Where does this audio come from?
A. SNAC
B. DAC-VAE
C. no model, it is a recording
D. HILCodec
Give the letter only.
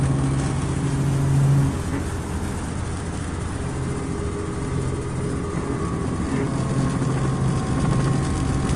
C